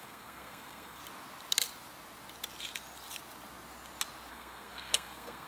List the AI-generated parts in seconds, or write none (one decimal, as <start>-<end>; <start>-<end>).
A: 0.0-1.0; 4.3-5.5